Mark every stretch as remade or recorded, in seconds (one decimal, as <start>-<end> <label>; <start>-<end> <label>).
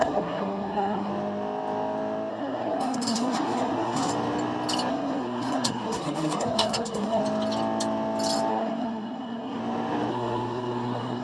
0.0-1.1 remade; 1.1-2.3 recorded; 2.3-4.1 remade; 4.1-4.9 recorded; 4.9-7.2 remade; 7.2-8.5 recorded; 8.5-9.6 remade; 9.6-10.1 recorded; 10.1-11.2 remade